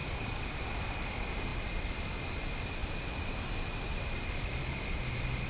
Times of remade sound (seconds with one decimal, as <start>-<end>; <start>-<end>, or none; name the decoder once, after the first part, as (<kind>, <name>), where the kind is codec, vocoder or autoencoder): none